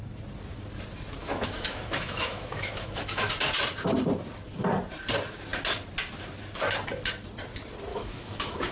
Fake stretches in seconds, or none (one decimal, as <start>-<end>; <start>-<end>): 1.2-3.3; 7.9-8.7